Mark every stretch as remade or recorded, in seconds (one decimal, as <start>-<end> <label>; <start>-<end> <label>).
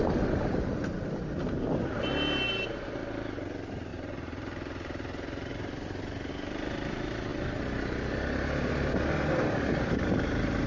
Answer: 0.0-3.9 recorded; 3.9-6.3 remade; 6.3-7.3 recorded; 7.3-10.7 remade